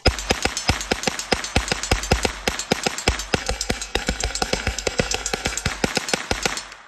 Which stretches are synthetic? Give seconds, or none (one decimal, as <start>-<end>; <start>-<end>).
3.4-5.7